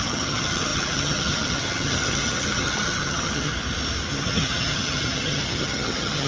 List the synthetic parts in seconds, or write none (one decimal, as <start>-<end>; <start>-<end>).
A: 0.0-3.5; 4.1-6.3